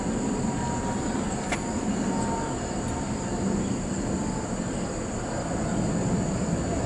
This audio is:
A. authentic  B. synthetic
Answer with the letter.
A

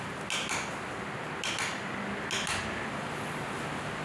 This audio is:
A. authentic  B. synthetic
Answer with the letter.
A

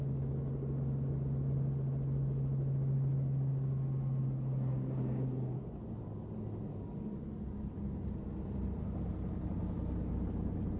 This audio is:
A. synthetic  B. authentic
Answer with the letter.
B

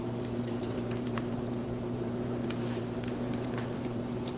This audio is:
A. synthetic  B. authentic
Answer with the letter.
A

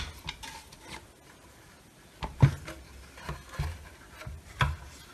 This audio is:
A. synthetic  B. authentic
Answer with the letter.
B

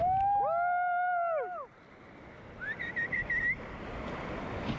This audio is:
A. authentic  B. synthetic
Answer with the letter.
A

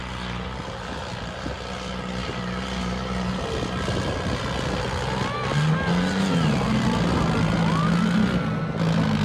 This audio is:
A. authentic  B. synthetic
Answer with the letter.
A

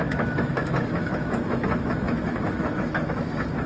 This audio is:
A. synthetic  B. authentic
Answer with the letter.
A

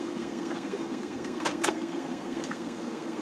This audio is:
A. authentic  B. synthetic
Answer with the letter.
B